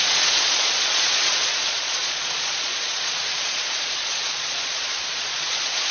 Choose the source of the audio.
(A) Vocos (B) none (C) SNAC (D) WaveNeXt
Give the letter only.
A